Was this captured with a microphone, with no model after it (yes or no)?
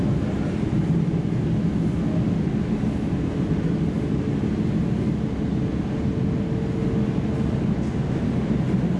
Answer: yes